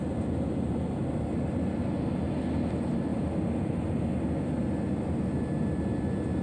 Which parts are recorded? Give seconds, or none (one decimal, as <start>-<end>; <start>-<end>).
0.0-6.4